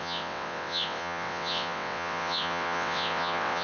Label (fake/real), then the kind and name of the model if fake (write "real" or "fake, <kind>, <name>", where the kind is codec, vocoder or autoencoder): fake, vocoder, WaveNeXt